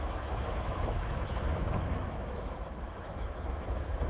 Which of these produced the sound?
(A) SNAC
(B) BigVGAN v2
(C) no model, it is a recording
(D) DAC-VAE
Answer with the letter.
D